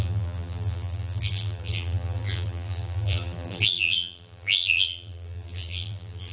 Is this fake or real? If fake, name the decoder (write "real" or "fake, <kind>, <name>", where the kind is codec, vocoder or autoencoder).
fake, vocoder, BigVGAN v2